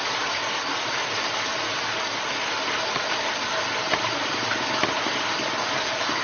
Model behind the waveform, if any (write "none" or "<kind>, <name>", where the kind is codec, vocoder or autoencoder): none